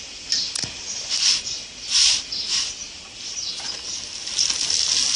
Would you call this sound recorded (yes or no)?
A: yes